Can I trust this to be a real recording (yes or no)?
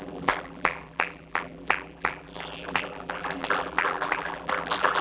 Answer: no